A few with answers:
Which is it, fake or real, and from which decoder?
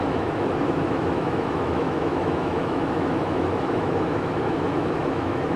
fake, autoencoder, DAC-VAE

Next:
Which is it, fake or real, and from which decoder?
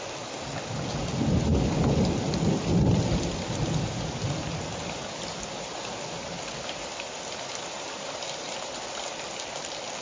real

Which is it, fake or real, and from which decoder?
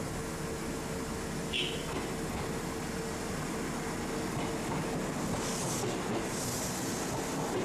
real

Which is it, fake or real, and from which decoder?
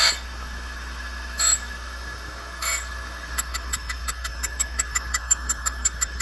fake, autoencoder, DAC-VAE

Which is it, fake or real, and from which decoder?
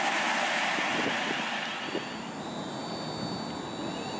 real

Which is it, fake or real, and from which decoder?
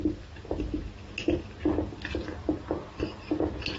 real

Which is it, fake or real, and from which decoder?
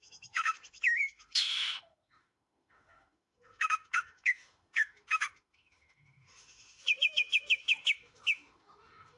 fake, autoencoder, DAC-VAE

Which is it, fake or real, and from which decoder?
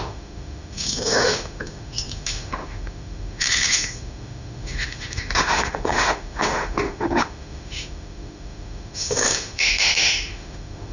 fake, autoencoder, DAC-VAE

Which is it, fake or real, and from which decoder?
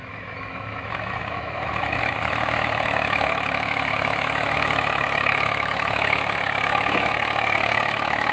fake, autoencoder, DAC-VAE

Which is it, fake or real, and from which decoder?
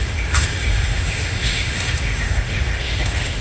fake, autoencoder, DAC-VAE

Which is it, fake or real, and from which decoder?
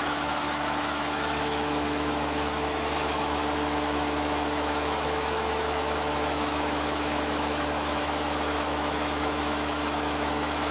fake, autoencoder, DAC-VAE